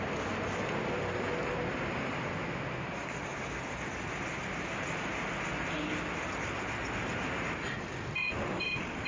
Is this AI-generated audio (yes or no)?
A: no